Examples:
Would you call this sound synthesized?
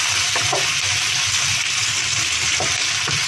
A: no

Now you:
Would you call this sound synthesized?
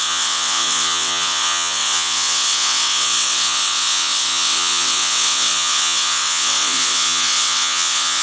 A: yes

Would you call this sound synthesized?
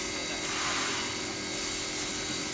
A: no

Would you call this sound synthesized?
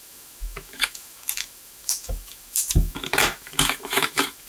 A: yes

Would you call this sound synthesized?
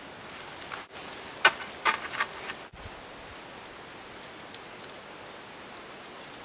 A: no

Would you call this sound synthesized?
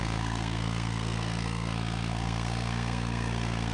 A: yes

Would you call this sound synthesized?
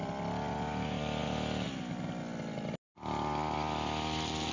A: no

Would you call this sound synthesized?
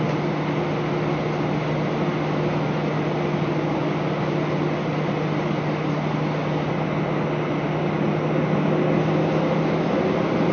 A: no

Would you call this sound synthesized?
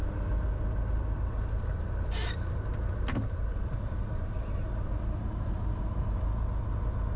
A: no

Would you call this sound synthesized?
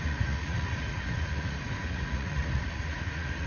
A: yes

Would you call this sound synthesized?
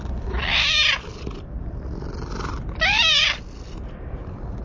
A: yes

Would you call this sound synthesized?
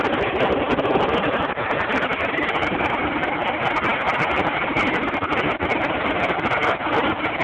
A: no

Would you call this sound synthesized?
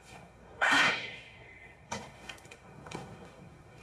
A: yes